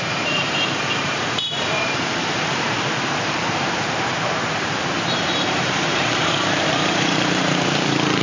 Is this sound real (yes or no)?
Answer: no